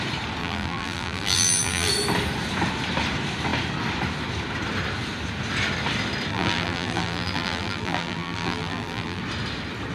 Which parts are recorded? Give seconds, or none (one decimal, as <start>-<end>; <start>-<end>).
0.0-0.4; 1.9-6.3; 9.2-9.9